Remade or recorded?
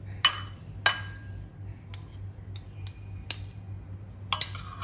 recorded